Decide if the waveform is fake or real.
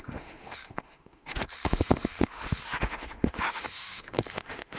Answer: fake